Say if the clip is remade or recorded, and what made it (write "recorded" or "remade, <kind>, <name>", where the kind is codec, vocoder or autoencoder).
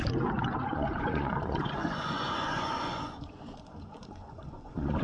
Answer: remade, vocoder, Vocos